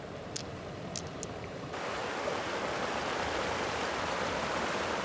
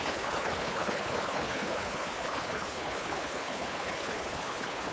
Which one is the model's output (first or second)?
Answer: second